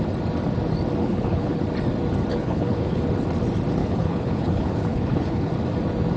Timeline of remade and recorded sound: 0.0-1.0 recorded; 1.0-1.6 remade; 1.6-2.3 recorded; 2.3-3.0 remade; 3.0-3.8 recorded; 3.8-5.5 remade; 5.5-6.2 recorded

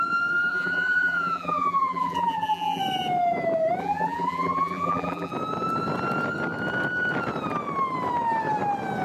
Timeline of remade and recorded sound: 0.0-0.5 recorded; 0.5-2.8 remade; 2.8-3.8 recorded; 3.8-5.3 remade; 5.3-9.0 recorded

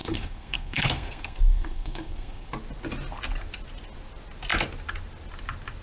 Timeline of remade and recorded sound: 0.0-2.5 remade; 2.5-5.8 recorded